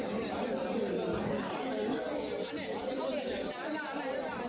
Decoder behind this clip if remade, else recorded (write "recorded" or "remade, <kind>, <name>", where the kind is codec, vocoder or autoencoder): recorded